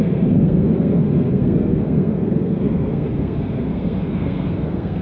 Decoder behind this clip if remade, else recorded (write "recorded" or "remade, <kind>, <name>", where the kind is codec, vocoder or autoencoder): remade, codec, SNAC